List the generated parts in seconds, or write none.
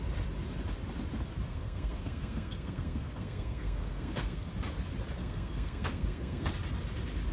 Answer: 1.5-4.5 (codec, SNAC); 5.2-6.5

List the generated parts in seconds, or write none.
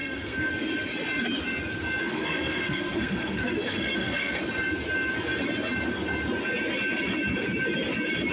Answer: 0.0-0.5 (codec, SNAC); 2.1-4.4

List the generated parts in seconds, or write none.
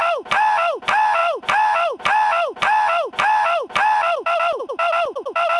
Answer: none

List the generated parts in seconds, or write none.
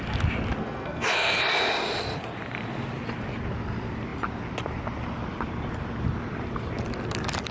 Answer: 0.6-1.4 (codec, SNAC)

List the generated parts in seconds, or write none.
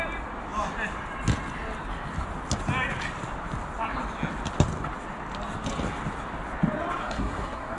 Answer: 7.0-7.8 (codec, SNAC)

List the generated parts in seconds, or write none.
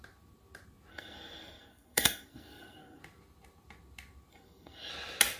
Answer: 0.9-3.0 (codec, SNAC); 4.3-4.9